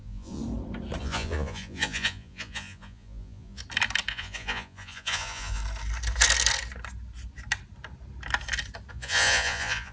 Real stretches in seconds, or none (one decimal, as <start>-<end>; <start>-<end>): 0.4-1.0; 3.6-4.1; 5.6-8.9